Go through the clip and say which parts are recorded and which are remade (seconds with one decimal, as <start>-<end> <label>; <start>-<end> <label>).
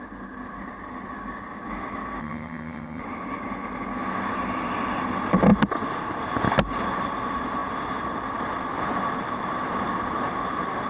0.0-2.2 recorded; 2.2-3.0 remade; 3.0-10.9 recorded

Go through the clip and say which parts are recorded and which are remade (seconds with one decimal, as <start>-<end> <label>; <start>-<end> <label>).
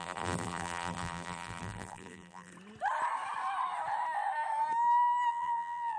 0.0-2.5 remade; 2.5-5.3 recorded; 5.3-6.0 remade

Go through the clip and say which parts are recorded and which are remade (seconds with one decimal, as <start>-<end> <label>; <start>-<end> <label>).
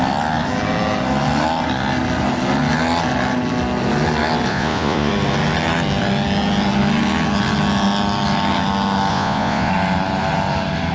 0.0-4.5 recorded; 4.5-5.1 remade; 5.1-9.1 recorded; 9.1-9.7 remade; 9.7-10.9 recorded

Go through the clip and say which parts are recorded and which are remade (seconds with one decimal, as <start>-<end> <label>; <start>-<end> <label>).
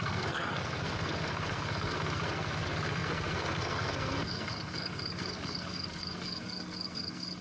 0.0-7.4 remade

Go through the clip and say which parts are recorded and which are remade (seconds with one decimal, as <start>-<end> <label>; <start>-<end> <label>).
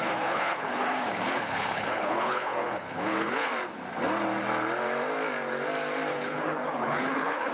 0.0-3.5 remade; 3.5-6.1 recorded; 6.1-7.5 remade